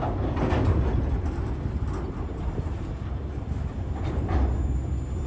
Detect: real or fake real